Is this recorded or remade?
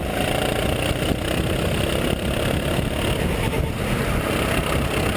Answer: recorded